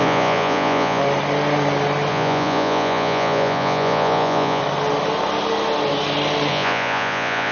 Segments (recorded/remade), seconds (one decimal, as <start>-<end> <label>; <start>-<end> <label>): 0.0-1.0 remade; 1.0-2.1 recorded; 2.1-4.6 remade; 4.6-6.5 recorded; 6.5-7.5 remade